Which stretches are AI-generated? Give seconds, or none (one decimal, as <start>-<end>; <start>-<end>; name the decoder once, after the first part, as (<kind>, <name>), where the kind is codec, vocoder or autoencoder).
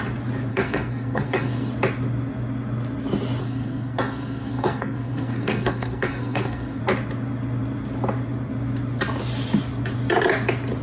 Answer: 0.5-1.7 (codec, SNAC); 3.4-6.8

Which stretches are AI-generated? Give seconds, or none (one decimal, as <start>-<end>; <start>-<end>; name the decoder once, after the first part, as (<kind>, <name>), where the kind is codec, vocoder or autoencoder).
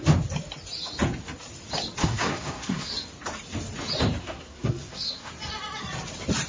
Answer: 2.0-2.9 (codec, SNAC); 4.2-5.3